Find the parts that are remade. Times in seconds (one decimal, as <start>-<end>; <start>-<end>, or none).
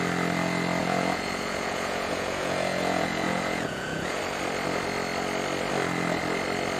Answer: 0.8-4.2